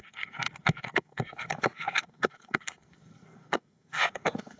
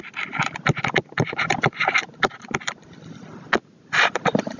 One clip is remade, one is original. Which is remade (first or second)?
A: first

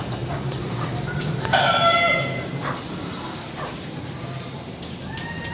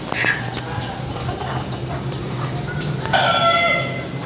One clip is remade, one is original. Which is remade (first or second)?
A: first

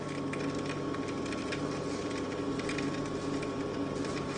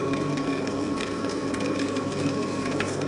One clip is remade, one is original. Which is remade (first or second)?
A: second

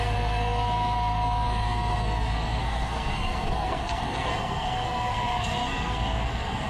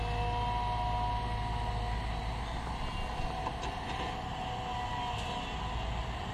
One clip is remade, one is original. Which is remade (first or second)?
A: first